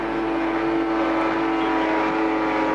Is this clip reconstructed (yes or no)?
no